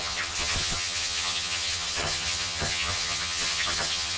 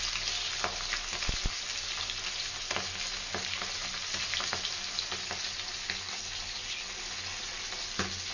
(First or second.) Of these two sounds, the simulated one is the first